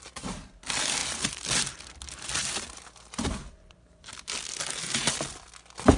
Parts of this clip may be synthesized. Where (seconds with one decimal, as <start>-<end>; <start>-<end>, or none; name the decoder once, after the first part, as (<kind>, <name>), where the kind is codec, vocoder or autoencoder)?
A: 1.0-4.6 (vocoder, BigVGAN v2)